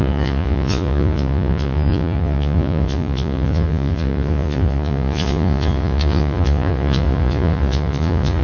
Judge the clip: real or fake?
fake